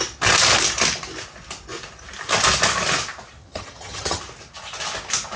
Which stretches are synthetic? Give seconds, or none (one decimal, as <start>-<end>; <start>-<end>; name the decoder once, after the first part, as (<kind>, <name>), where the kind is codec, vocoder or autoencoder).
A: 3.4-4.2 (vocoder, HiFi-GAN)

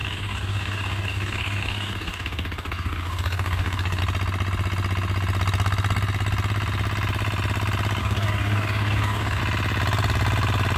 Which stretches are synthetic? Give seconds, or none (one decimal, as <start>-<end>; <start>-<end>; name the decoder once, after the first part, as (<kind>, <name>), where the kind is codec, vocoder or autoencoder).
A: 0.0-4.0 (codec, DAC); 8.0-9.4

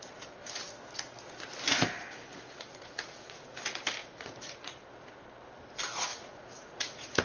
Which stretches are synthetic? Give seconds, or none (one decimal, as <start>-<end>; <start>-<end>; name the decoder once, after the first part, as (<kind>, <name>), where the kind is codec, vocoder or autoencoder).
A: 2.3-3.6 (vocoder, Vocos); 4.0-4.9; 6.1-7.2

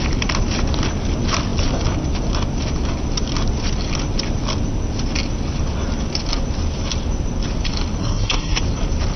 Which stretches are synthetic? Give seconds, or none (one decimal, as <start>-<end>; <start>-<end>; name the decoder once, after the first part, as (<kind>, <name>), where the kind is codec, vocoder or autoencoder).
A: 8.0-8.6 (codec, SNAC)

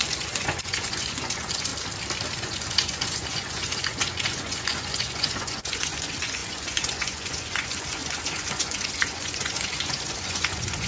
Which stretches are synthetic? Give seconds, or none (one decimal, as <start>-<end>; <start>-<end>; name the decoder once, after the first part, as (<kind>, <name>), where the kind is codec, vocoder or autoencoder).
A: 0.0-1.7 (vocoder, Vocos); 2.4-10.9

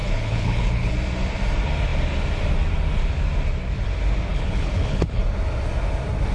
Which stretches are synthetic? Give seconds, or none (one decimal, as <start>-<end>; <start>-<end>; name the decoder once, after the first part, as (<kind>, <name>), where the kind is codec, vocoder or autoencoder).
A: 0.0-0.9 (codec, HILCodec); 4.3-5.2

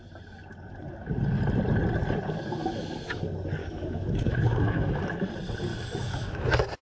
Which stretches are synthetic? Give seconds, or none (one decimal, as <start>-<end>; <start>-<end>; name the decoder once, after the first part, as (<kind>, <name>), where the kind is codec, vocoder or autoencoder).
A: 2.6-3.2 (autoencoder, DAC-VAE); 3.6-5.3; 5.7-6.5

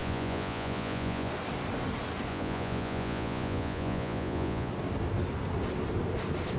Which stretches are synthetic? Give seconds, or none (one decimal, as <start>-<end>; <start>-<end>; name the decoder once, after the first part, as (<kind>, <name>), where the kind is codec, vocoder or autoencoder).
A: 0.0-1.3 (vocoder, Vocos); 2.3-4.7